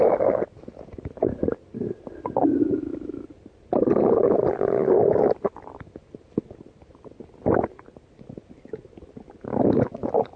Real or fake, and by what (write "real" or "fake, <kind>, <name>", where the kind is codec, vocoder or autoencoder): real